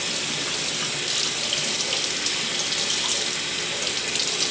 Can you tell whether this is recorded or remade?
recorded